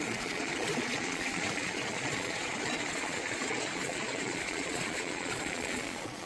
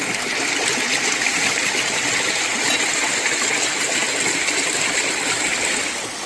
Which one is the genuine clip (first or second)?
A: second